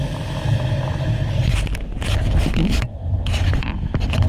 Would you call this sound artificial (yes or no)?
no